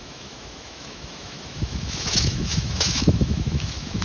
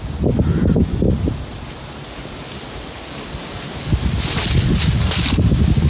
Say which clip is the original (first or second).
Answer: second